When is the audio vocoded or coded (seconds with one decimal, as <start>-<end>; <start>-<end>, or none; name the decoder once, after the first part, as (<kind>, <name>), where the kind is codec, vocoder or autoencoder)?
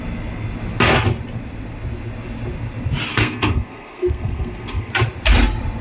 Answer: 3.1-4.9 (codec, SNAC)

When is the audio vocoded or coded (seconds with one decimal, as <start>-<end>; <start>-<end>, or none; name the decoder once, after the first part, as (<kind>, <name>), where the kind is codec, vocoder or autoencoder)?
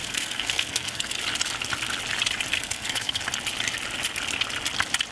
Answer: 0.0-1.1 (codec, SNAC); 2.5-3.2